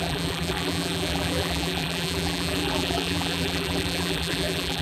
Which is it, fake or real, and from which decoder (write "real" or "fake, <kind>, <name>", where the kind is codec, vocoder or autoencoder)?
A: fake, vocoder, BigVGAN v2